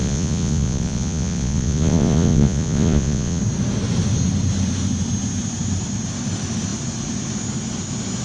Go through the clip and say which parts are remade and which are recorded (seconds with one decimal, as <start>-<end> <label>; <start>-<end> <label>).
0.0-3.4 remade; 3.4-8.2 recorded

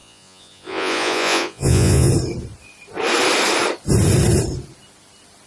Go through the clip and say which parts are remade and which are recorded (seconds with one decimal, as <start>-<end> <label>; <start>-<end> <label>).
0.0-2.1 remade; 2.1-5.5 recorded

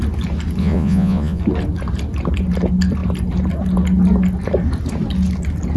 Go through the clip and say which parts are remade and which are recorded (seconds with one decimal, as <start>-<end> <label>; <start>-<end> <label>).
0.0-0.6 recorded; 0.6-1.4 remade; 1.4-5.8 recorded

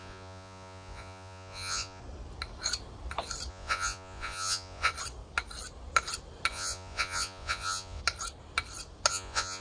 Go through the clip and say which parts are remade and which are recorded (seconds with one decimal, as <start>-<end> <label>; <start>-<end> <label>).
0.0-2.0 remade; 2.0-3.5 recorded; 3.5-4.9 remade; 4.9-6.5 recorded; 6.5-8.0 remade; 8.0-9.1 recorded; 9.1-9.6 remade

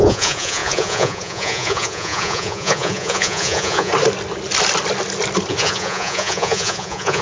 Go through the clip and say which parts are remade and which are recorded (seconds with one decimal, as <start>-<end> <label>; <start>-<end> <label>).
0.0-3.9 remade; 3.9-5.5 recorded; 5.5-7.2 remade

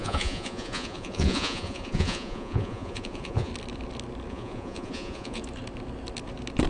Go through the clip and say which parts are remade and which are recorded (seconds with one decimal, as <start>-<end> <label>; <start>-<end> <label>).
0.0-3.5 remade; 3.5-4.3 recorded; 4.3-5.4 remade; 5.4-6.7 recorded